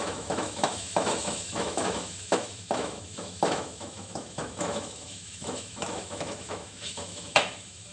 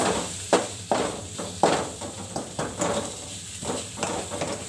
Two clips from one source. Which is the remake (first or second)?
first